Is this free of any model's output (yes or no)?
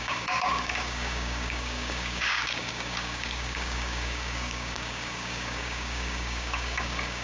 no